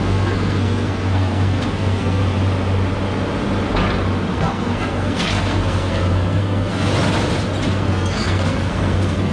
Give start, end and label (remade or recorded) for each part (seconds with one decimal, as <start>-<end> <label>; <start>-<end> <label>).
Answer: 0.0-2.2 remade; 2.2-4.3 recorded; 4.3-6.9 remade; 6.9-7.7 recorded; 7.7-9.3 remade